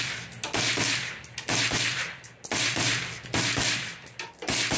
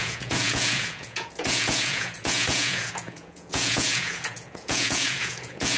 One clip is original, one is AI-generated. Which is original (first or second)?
first